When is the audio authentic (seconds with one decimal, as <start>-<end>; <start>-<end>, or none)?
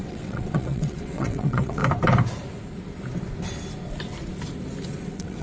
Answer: 1.8-5.0